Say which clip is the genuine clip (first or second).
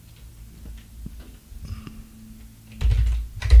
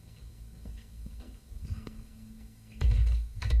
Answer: first